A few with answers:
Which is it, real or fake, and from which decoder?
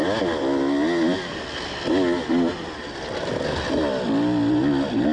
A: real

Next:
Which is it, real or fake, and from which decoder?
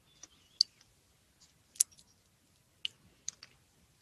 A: real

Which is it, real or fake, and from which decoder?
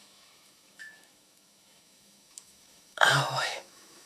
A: fake, autoencoder, DAC-VAE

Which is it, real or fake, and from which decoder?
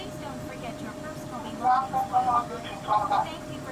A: real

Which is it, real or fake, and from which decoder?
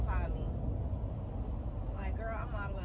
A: real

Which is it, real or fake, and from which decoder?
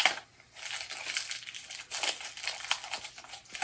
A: real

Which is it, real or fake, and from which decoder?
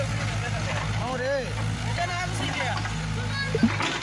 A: real